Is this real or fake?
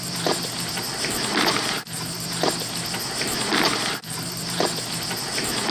fake